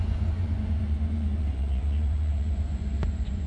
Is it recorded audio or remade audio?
remade